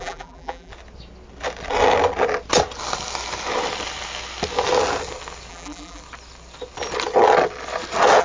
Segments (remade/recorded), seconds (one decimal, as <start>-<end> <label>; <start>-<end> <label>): 0.0-0.7 remade; 0.7-5.5 recorded; 5.5-6.0 remade; 6.0-8.2 recorded

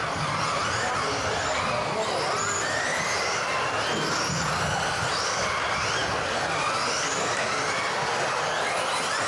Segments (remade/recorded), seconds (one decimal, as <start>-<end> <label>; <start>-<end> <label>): 0.0-9.3 recorded

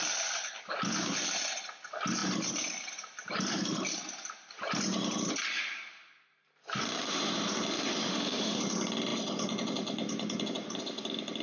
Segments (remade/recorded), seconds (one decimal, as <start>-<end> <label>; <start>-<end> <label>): 0.0-8.1 recorded; 8.1-8.6 remade; 8.6-11.4 recorded

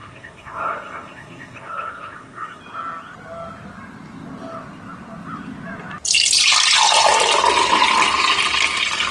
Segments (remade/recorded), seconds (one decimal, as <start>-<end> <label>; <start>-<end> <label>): 0.0-2.6 remade; 2.6-9.1 recorded

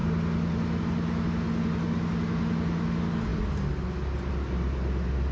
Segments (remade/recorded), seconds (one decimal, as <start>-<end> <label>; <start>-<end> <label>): 0.0-5.3 recorded

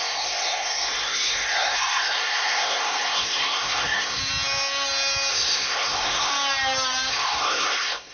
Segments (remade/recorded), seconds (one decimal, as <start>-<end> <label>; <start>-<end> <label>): 0.0-4.2 remade; 4.2-5.3 recorded; 5.3-6.3 remade; 6.3-7.1 recorded; 7.1-8.1 remade